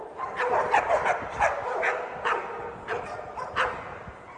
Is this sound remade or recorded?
remade